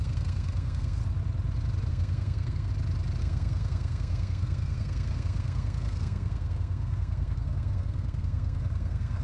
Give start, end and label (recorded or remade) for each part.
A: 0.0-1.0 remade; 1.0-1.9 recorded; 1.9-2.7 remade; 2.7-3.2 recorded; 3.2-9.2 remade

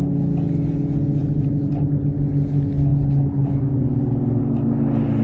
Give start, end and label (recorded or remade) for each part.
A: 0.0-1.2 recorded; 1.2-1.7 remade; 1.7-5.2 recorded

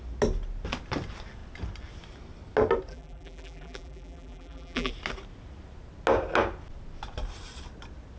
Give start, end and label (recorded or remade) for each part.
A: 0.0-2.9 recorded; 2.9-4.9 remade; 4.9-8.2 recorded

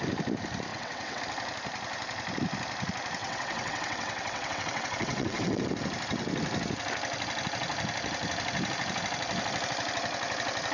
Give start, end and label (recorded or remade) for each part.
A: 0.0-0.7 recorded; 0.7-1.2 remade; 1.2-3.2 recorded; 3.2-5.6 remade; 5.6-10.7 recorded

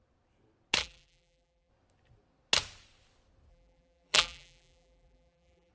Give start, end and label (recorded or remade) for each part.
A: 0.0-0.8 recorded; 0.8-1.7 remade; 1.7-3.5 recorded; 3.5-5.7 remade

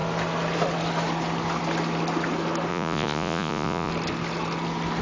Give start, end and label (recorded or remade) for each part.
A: 0.0-2.7 recorded; 2.7-3.9 remade; 3.9-5.0 recorded